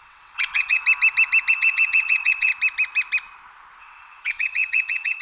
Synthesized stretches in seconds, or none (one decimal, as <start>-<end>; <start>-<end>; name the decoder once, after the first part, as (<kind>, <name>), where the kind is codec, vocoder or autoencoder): 0.0-0.8 (vocoder, WaveNeXt); 1.5-2.5; 3.8-5.2